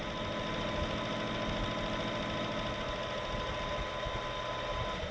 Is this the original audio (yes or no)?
yes